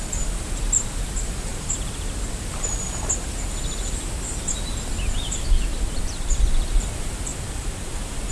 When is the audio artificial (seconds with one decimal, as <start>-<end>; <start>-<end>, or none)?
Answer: 1.5-2.3; 5.7-6.4; 7.3-7.9